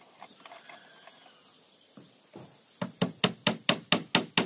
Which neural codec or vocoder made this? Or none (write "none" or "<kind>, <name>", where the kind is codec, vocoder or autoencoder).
none